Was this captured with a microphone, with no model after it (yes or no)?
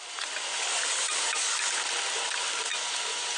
yes